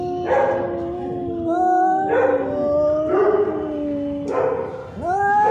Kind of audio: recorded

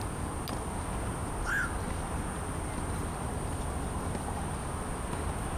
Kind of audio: recorded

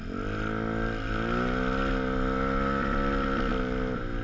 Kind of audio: recorded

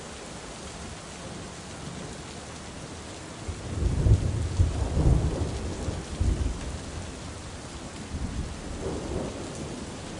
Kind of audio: recorded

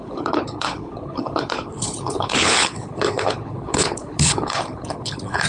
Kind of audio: remade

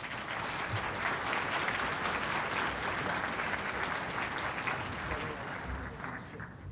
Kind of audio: recorded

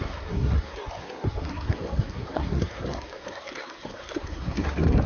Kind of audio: remade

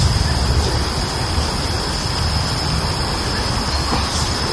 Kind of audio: recorded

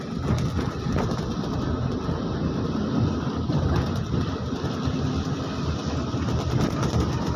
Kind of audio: recorded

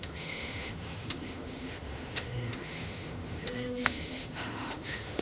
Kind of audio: remade